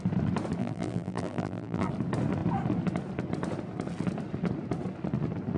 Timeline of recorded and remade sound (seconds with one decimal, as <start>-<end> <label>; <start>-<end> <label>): 0.0-0.6 recorded; 0.6-1.9 remade; 1.9-5.6 recorded